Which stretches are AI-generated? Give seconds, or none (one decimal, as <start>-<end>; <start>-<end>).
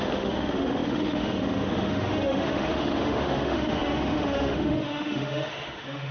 0.0-6.1